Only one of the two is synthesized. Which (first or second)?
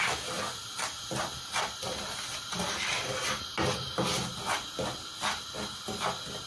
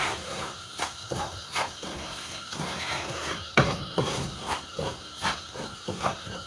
second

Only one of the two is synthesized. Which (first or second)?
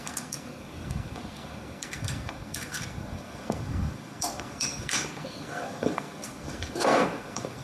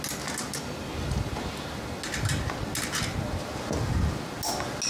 first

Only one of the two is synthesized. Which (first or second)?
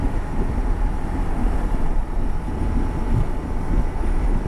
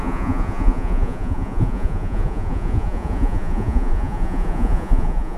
second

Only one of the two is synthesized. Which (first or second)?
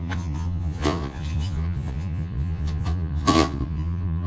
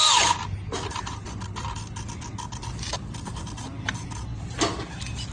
first